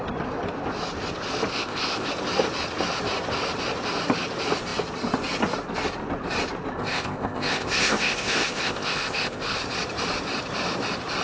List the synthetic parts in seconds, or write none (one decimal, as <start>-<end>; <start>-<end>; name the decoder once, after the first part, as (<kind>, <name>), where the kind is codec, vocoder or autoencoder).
1.5-2.1 (codec, ZipCodec); 6.8-9.6

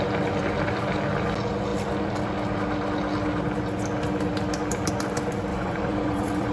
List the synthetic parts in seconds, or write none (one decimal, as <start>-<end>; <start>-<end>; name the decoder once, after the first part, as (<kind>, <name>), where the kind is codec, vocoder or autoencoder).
5.5-6.5 (vocoder, Vocos)

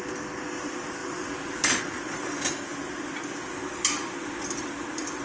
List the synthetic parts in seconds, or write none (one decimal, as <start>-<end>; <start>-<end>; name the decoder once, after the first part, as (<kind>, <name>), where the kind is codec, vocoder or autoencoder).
none

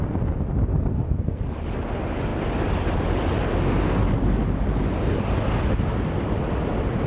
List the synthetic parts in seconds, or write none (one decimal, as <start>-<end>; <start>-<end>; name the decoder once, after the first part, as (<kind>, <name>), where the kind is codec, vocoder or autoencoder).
0.7-1.4 (codec, SNAC)

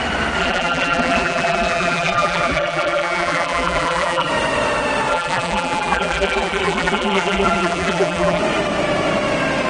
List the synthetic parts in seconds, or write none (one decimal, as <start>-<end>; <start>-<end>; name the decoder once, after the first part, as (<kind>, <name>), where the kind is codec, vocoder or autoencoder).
0.4-4.3 (vocoder, BigVGAN v2); 5.1-8.4